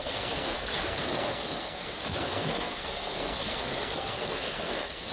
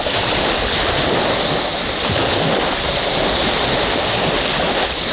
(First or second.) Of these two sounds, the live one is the second